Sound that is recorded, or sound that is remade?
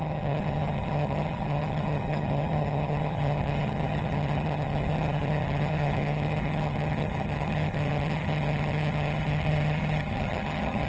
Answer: remade